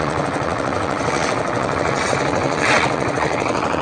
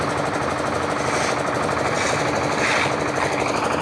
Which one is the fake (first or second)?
first